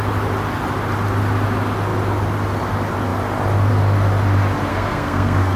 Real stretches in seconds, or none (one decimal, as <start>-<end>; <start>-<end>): 0.0-4.7